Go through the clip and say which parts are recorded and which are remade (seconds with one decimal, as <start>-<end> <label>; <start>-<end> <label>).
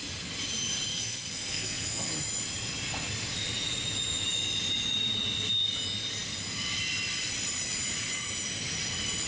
0.0-0.9 recorded; 0.9-2.1 remade; 2.1-9.3 recorded